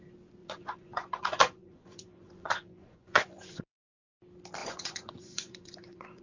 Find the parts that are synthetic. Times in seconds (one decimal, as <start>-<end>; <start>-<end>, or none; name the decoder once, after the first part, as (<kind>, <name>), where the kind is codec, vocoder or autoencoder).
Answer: 0.4-3.6 (vocoder, Vocos); 4.6-6.2